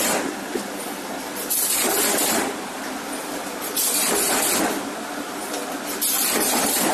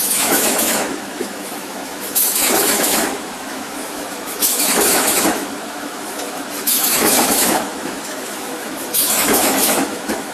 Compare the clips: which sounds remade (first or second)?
second